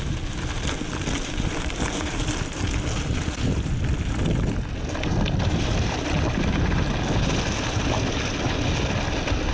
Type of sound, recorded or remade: recorded